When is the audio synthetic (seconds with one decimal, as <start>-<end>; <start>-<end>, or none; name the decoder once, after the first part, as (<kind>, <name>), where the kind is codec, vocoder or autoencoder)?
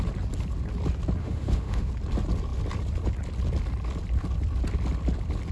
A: 1.2-1.9 (autoencoder, DAC-VAE)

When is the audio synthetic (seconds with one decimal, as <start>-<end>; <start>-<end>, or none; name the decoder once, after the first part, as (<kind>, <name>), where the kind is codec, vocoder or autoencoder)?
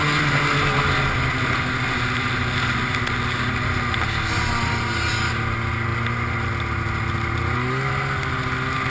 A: none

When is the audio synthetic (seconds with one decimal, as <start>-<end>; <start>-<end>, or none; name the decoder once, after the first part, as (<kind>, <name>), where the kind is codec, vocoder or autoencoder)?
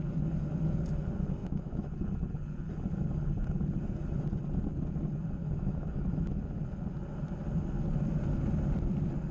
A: 1.4-1.9 (autoencoder, DAC-VAE); 5.4-6.3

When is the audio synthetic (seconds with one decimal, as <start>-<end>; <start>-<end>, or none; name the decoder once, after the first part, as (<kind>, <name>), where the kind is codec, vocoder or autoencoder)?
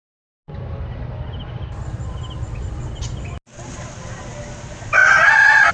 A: none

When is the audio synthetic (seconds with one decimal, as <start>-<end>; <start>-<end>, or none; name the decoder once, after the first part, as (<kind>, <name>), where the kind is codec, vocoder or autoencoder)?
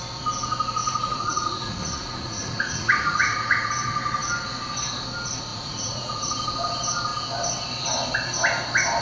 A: 0.8-3.7 (vocoder, Vocos); 5.5-6.2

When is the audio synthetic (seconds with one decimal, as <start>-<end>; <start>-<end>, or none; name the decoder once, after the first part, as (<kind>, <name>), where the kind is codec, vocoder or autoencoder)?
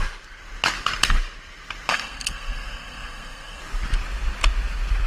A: 1.9-3.6 (codec, SNAC)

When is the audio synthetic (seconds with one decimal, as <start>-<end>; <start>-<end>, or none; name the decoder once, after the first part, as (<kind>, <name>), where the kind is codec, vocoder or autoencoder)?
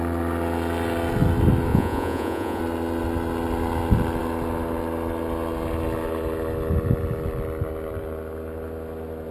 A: 1.7-2.6 (vocoder, Vocos)